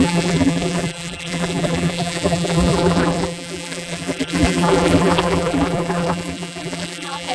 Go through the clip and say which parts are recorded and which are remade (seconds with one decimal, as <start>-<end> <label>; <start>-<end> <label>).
0.0-7.3 remade